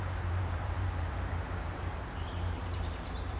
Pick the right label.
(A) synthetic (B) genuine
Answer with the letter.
A